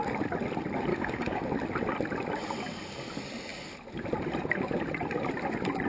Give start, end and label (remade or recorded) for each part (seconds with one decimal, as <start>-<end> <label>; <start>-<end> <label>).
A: 0.0-0.9 recorded; 0.9-1.5 remade; 1.5-5.9 recorded